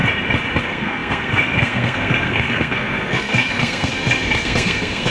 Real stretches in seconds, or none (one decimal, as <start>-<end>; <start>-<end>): 0.0-0.6